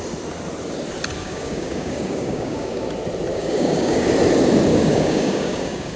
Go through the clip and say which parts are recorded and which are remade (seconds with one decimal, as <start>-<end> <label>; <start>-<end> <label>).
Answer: 0.0-1.2 recorded; 1.2-2.9 remade; 2.9-3.3 recorded; 3.3-4.1 remade; 4.1-4.7 recorded; 4.7-6.0 remade